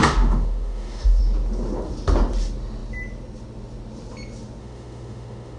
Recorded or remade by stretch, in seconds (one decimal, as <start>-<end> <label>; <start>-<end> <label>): 0.0-1.2 remade; 1.2-4.6 recorded; 4.6-5.6 remade